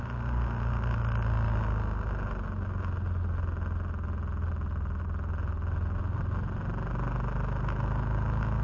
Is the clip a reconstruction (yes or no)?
no